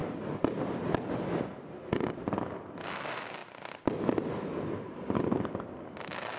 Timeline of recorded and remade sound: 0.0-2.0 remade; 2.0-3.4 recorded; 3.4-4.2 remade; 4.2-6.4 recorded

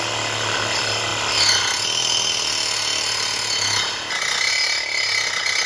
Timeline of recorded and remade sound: 0.0-5.7 recorded

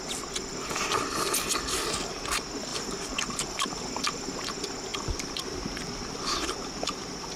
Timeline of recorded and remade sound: 0.0-2.7 recorded; 2.7-4.3 remade; 4.3-4.9 recorded; 4.9-7.4 remade

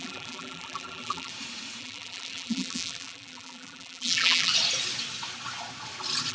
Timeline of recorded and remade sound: 0.0-1.3 remade; 1.3-1.8 recorded; 1.8-4.5 remade; 4.5-6.3 recorded

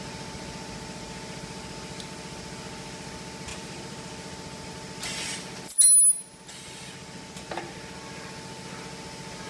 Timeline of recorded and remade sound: 0.0-3.5 recorded; 3.5-4.7 remade; 4.7-9.5 recorded

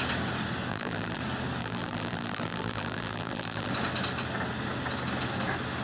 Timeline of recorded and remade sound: 0.0-0.7 recorded; 0.7-1.2 remade; 1.2-1.6 recorded; 1.6-3.7 remade; 3.7-5.8 recorded

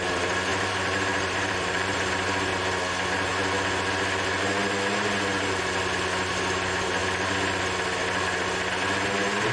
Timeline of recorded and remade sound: 0.0-0.5 recorded; 0.5-2.1 remade; 2.1-9.5 recorded

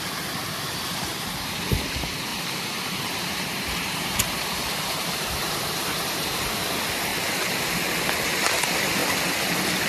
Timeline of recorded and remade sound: 0.0-2.3 recorded; 2.3-6.4 remade; 6.4-9.9 recorded